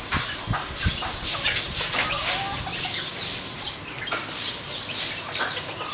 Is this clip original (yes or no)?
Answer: no